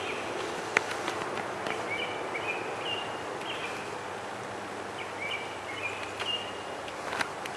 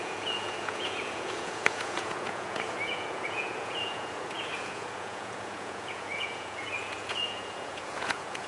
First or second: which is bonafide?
first